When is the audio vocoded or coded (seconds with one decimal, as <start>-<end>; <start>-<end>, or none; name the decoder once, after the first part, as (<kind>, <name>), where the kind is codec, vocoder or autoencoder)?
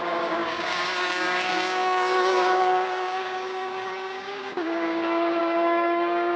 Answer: 0.0-6.4 (codec, DAC)